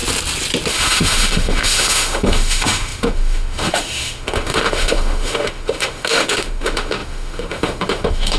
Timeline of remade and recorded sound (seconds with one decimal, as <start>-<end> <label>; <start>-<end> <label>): 0.0-0.7 recorded; 0.7-8.4 remade